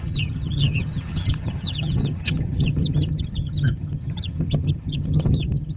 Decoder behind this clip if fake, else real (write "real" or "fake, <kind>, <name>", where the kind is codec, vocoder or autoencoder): fake, vocoder, HiFi-GAN